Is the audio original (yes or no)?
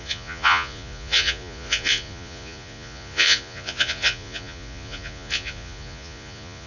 no